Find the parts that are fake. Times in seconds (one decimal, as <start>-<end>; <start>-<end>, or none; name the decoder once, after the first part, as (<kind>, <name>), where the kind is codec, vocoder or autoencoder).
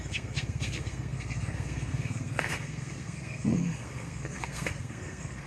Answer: 0.0-5.5 (codec, SNAC)